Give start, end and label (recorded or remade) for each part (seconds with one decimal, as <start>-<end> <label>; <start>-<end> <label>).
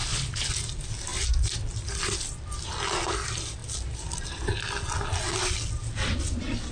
0.0-0.5 remade; 0.5-6.7 recorded